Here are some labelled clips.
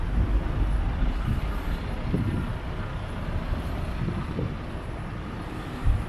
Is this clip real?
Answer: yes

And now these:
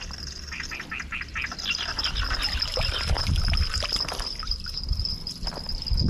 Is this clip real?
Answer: yes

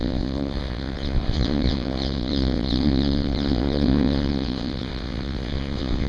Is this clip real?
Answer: no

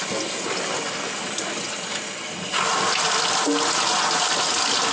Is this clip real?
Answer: yes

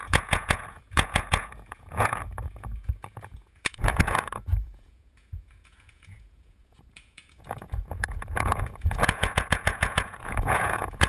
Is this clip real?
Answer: no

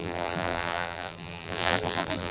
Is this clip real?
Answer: no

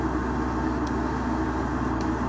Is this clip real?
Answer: yes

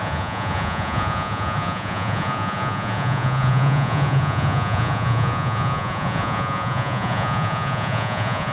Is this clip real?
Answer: no